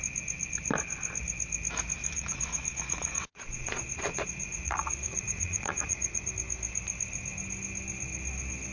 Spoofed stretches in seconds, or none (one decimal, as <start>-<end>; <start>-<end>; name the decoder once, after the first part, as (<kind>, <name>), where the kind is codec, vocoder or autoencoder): 2.0-6.3 (vocoder, Vocos)